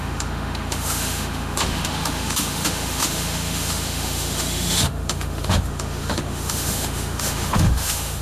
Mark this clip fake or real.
fake